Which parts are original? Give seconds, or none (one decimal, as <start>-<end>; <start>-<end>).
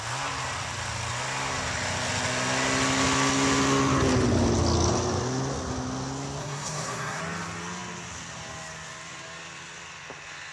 0.0-6.4; 7.2-10.5